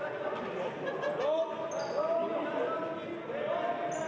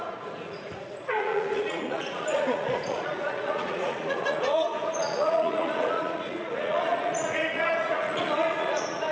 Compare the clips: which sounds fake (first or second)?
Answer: second